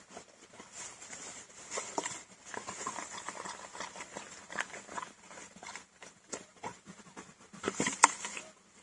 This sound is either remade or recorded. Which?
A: recorded